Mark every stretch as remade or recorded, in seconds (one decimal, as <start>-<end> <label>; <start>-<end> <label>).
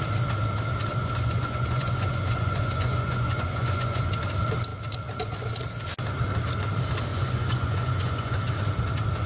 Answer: 0.0-0.9 recorded; 0.9-4.1 remade; 4.1-7.1 recorded; 7.1-8.4 remade; 8.4-9.3 recorded